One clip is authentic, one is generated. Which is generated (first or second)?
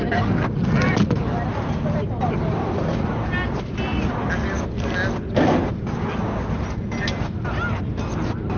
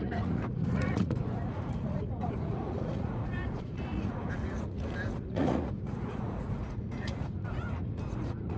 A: second